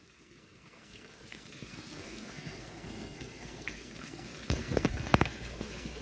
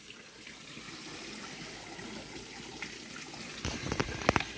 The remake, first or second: first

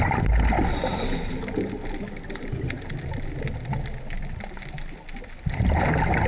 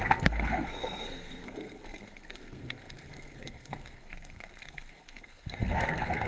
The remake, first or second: second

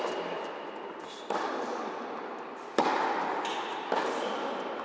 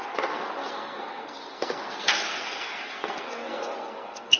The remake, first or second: second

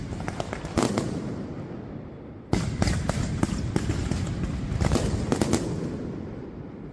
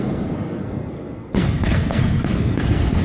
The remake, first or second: second